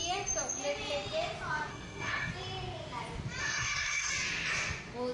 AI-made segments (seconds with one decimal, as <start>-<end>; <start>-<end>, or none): 1.7-2.3; 3.4-4.1